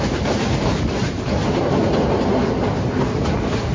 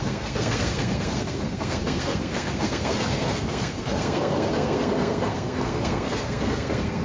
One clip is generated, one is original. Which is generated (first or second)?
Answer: second